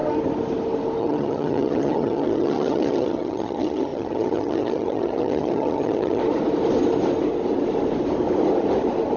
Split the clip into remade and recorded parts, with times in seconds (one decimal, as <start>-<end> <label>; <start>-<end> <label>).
0.0-1.0 recorded; 1.0-6.2 remade; 6.2-9.2 recorded